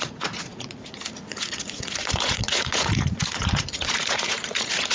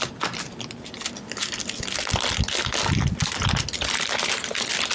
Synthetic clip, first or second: first